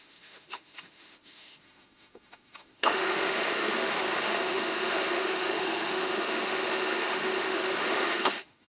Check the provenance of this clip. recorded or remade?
remade